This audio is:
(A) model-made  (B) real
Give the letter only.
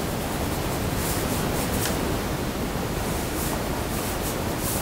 B